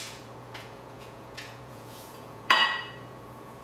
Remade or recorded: remade